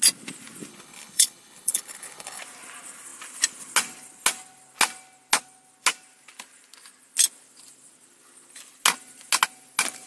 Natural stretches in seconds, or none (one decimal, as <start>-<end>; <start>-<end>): 0.0-0.7; 2.4-10.1